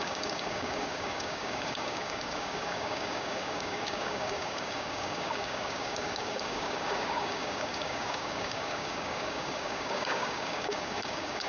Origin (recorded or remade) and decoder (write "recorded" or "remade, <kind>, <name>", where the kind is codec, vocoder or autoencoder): remade, codec, DAC